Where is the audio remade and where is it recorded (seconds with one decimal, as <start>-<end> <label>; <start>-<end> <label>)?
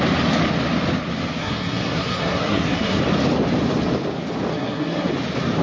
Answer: 0.0-1.4 recorded; 1.4-3.0 remade; 3.0-4.5 recorded; 4.5-5.1 remade; 5.1-5.6 recorded